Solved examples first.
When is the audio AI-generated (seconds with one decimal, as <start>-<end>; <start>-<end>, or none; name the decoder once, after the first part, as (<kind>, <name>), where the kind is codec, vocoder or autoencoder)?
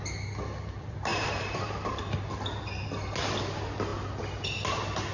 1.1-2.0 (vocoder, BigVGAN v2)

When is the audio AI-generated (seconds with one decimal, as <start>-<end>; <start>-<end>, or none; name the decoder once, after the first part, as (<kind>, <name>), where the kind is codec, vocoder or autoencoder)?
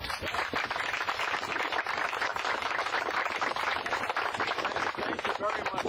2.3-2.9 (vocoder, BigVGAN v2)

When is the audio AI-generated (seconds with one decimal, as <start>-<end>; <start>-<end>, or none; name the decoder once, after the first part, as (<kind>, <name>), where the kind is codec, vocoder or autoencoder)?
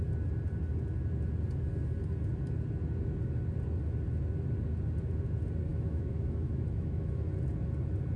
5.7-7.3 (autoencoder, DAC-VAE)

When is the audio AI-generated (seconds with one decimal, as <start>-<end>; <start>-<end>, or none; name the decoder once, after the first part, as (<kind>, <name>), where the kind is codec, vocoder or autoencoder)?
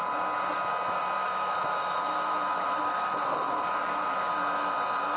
1.2-4.3 (autoencoder, DAC-VAE)